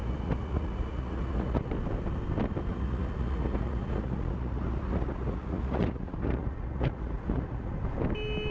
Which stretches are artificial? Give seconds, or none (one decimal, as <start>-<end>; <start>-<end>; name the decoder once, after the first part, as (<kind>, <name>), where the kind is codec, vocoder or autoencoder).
0.0-1.7 (vocoder, Vocos); 2.7-7.7